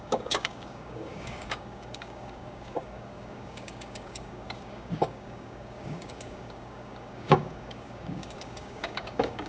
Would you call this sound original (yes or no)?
no